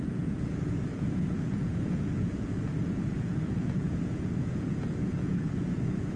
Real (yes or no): no